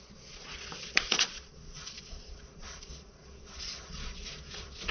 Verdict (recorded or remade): remade